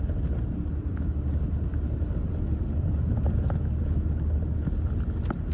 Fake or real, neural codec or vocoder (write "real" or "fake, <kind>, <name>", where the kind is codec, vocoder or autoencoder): real